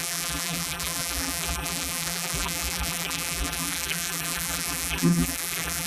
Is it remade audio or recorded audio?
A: remade